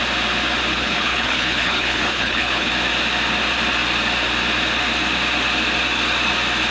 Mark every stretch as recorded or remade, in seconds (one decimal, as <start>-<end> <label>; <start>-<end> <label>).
0.0-0.7 recorded; 0.7-2.7 remade; 2.7-6.7 recorded